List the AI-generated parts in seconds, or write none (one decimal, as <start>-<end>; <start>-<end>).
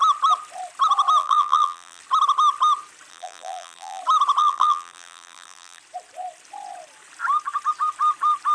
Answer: 1.2-2.0; 3.1-4.0; 4.4-5.8